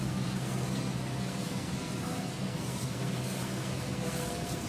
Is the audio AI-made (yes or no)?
yes